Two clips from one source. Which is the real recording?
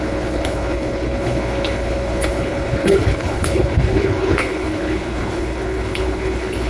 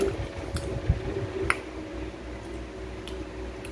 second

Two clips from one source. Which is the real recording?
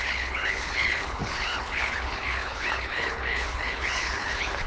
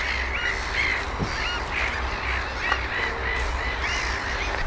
second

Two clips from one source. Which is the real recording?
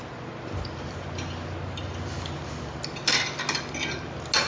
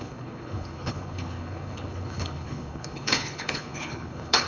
first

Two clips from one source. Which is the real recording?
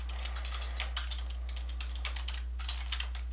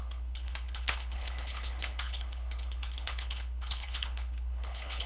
first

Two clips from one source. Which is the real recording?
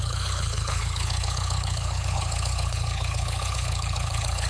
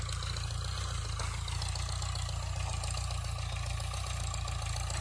second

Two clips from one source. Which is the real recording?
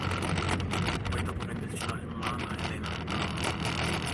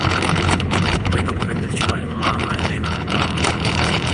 first